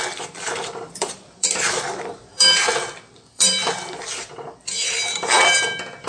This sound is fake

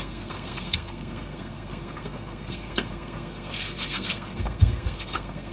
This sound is fake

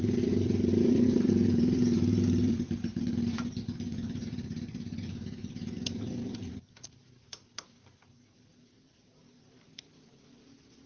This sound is fake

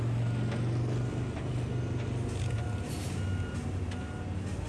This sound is real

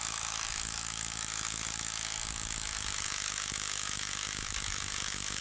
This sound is fake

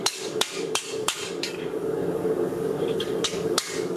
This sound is fake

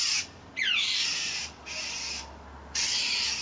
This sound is real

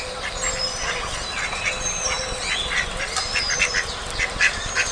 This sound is real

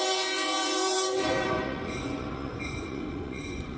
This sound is fake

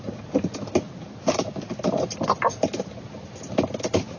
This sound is real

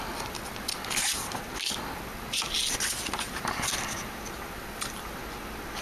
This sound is real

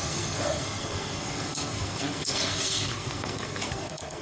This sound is fake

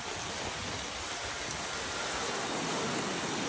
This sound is real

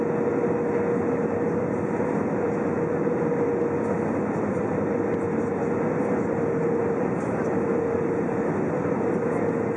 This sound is real